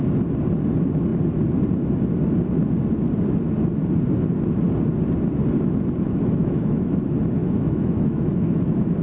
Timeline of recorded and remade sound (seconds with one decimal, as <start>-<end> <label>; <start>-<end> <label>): 0.0-6.4 recorded; 6.4-7.0 remade; 7.0-7.4 recorded; 7.4-8.5 remade; 8.5-9.0 recorded